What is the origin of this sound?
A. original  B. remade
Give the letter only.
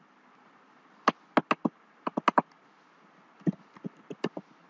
A